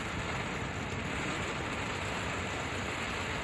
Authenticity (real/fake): real